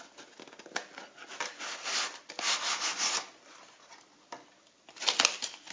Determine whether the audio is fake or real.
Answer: real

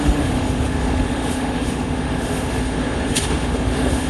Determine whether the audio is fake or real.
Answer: fake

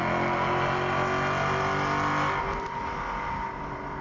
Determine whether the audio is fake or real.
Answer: real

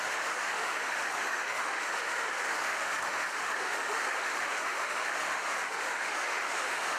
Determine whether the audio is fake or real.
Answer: fake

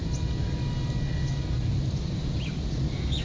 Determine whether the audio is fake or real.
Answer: real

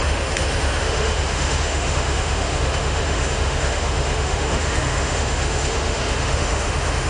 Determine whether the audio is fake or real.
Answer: fake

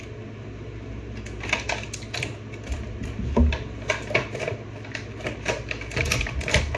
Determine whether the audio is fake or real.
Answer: real